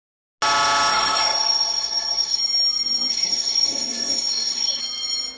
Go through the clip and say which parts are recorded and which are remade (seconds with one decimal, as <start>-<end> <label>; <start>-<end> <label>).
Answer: 0.0-0.9 recorded; 0.9-2.4 remade; 2.4-3.1 recorded; 3.1-4.8 remade; 4.8-5.4 recorded